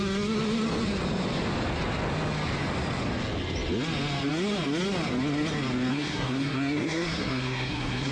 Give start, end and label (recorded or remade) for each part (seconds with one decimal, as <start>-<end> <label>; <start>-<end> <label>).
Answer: 0.0-5.9 recorded; 5.9-8.1 remade